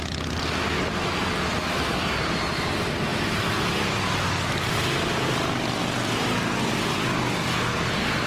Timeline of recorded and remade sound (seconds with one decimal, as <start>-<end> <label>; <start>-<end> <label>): 0.0-8.3 recorded